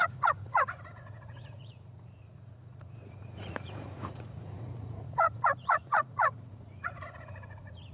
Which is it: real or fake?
fake